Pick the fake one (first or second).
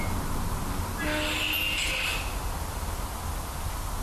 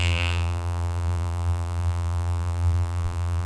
second